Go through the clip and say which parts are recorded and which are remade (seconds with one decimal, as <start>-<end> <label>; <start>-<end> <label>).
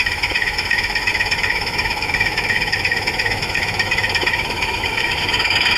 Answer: 0.0-5.8 remade